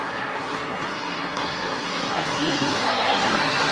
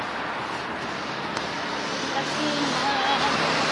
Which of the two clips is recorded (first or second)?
second